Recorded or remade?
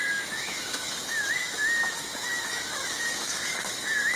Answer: remade